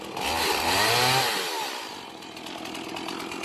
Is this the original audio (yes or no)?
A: yes